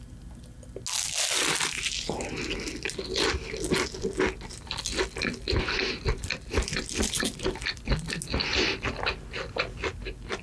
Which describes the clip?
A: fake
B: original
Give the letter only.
B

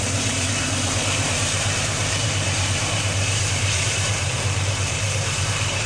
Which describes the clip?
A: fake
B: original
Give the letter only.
A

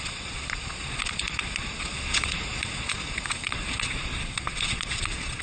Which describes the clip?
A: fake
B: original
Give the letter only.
A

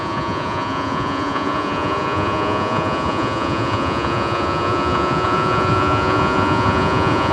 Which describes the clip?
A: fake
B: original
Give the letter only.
A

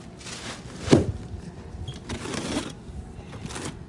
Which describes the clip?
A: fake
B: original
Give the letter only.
B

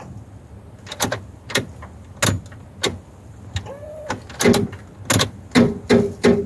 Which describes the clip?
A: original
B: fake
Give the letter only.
A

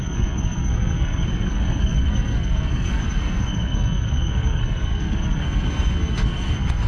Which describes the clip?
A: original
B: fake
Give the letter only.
B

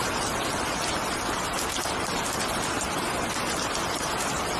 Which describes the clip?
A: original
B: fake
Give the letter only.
A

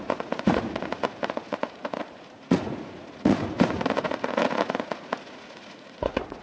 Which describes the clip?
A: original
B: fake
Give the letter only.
B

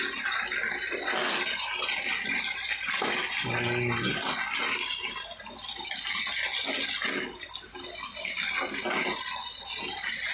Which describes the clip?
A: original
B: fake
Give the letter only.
A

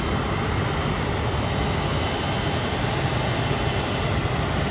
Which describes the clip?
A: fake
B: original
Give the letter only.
B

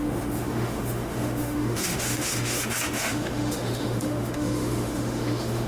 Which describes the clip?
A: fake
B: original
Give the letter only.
A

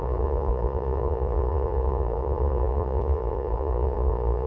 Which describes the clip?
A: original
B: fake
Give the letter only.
B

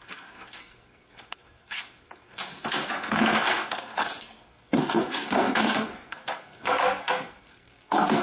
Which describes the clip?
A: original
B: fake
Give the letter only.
B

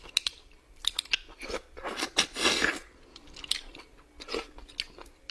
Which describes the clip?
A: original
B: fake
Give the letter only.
A